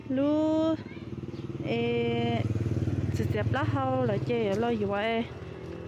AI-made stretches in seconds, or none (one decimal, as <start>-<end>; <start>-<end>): none